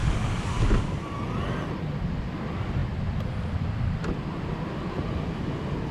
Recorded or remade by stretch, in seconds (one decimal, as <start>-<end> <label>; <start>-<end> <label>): 0.0-0.9 remade; 0.9-5.9 recorded